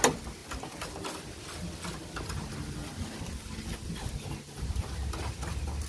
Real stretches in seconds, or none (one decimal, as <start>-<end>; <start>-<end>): 0.0-5.9